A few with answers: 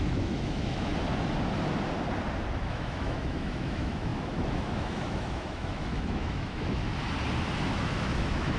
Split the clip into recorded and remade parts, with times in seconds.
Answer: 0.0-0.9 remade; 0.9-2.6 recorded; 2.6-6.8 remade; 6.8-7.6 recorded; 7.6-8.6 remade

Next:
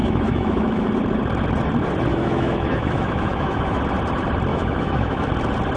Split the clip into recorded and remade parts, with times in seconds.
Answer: 0.0-0.9 remade; 0.9-2.1 recorded; 2.1-3.8 remade; 3.8-4.5 recorded; 4.5-5.3 remade; 5.3-5.8 recorded